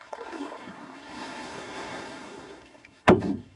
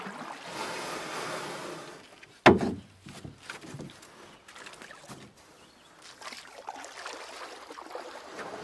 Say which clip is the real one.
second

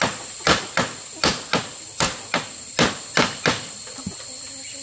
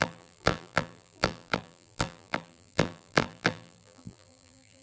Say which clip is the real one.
first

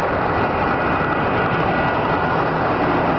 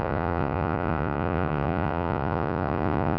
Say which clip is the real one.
first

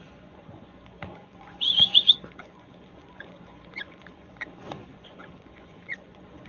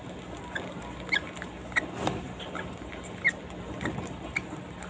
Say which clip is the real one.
second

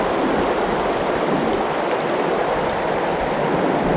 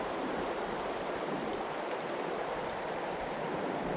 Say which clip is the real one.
first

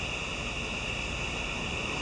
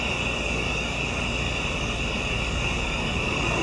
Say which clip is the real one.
first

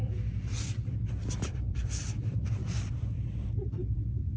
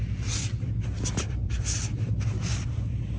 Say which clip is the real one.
second